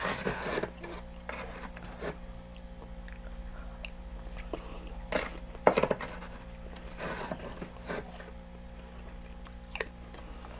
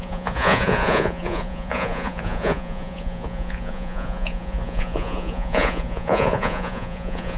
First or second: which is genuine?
first